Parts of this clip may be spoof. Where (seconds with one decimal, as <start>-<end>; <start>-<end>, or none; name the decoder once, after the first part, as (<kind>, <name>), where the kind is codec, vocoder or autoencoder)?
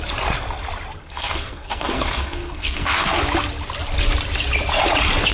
1.0-3.2 (codec, SNAC)